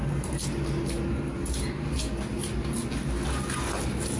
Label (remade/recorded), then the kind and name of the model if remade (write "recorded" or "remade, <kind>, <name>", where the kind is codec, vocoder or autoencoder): recorded